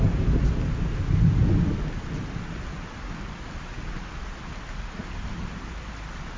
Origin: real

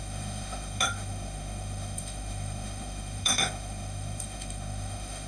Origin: fake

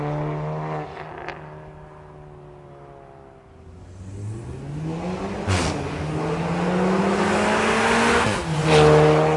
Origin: real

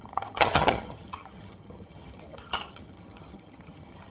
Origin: fake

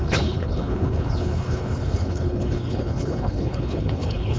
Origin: fake